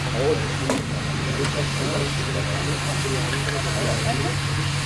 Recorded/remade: recorded